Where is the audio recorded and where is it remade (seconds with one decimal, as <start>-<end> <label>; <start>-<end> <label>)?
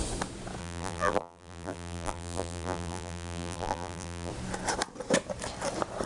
0.0-0.6 recorded; 0.6-4.3 remade; 4.3-6.1 recorded